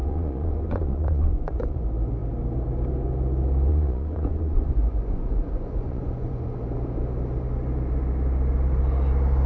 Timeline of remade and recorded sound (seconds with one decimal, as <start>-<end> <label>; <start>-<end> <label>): 0.0-1.8 remade; 1.8-3.7 recorded; 3.7-6.6 remade; 6.6-9.5 recorded